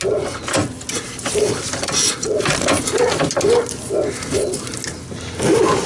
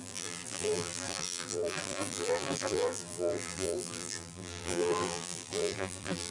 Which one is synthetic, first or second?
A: second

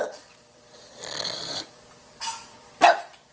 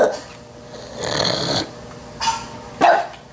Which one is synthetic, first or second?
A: first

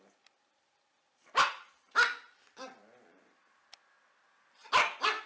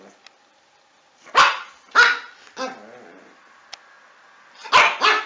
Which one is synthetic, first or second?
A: first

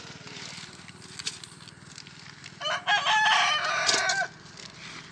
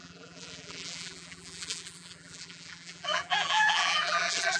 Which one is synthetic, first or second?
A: second